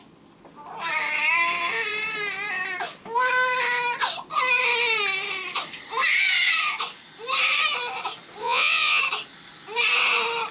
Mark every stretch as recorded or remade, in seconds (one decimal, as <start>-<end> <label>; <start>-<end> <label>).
0.0-8.4 recorded; 8.4-9.0 remade; 9.0-10.5 recorded